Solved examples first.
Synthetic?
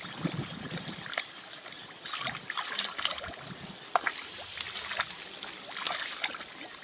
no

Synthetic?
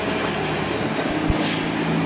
no